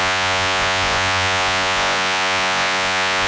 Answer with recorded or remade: remade